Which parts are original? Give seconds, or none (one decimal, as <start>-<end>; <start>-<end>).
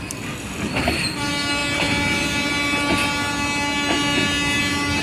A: 0.0-5.0